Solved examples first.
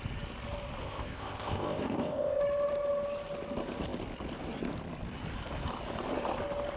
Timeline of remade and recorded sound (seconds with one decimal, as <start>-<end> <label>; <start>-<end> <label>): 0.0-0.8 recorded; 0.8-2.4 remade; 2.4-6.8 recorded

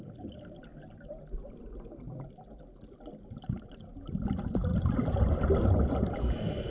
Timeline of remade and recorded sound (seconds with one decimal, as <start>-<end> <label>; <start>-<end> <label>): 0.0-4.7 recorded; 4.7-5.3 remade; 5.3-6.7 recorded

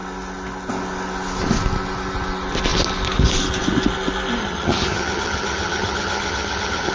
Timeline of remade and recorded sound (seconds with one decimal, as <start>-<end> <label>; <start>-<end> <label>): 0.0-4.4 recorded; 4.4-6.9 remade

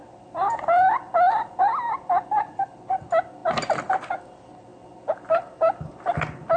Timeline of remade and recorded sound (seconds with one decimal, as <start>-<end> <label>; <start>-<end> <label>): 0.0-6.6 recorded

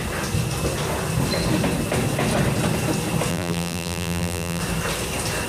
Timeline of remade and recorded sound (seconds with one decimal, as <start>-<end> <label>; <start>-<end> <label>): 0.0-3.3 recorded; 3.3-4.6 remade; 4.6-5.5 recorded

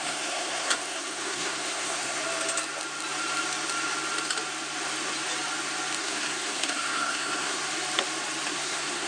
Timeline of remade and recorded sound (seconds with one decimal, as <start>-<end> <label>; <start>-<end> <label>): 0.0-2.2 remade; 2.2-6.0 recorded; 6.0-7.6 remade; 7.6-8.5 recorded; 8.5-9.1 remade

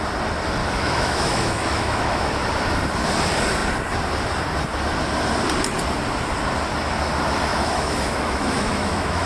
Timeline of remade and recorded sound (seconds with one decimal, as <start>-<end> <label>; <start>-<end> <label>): 0.0-0.6 recorded; 0.6-2.3 remade; 2.3-7.5 recorded; 7.5-9.3 remade

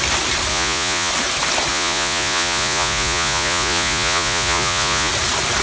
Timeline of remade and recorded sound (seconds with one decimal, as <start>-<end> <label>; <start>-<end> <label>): 0.0-0.5 recorded; 0.5-1.1 remade; 1.1-1.7 recorded; 1.7-5.1 remade; 5.1-5.6 recorded